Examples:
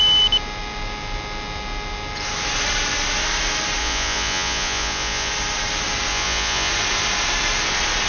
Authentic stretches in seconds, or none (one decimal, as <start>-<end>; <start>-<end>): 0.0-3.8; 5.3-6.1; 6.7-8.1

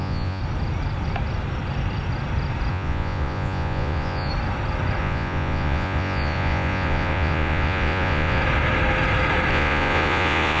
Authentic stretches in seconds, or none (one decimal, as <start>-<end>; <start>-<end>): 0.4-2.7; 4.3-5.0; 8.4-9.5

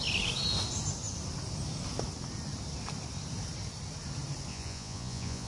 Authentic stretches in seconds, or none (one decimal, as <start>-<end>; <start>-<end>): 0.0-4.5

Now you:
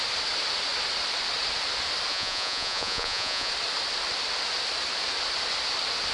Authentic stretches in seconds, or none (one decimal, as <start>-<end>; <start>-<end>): 0.0-2.1; 3.5-6.1